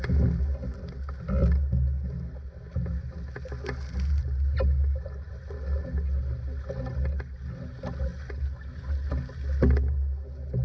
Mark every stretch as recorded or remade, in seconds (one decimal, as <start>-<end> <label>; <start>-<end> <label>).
0.0-10.6 recorded